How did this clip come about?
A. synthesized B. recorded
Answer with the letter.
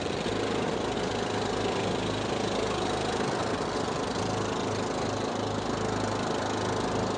B